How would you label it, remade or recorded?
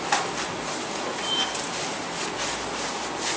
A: recorded